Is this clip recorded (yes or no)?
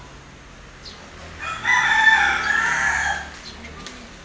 yes